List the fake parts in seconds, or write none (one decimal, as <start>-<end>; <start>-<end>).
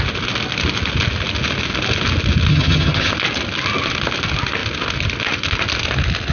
2.5-3.1